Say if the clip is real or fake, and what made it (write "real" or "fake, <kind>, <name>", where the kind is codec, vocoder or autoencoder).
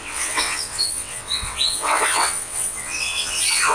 fake, vocoder, WaveNeXt